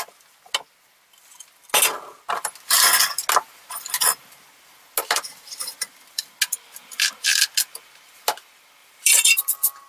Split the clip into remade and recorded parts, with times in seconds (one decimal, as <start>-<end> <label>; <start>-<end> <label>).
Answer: 0.0-8.8 recorded; 8.8-9.4 remade; 9.4-9.9 recorded